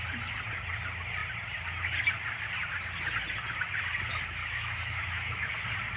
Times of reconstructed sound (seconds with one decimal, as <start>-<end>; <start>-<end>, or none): 4.4-5.5